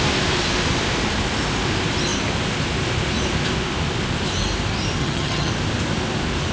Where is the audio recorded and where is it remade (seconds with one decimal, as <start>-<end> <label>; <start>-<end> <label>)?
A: 0.0-5.0 recorded; 5.0-5.5 remade; 5.5-6.5 recorded